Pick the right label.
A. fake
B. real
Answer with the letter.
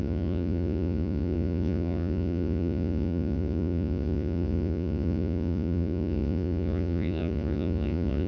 A